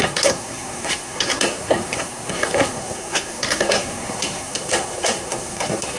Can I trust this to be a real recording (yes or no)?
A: no